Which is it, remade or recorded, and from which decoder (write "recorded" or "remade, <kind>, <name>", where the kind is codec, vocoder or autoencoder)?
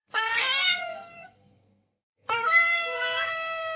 remade, codec, SNAC